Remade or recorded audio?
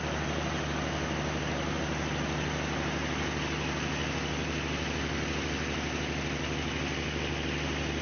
recorded